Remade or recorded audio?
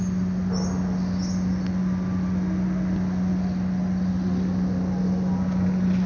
recorded